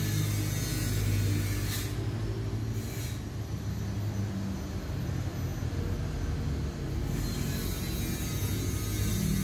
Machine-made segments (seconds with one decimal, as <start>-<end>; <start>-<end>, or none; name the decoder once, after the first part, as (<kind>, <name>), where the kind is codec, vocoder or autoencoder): none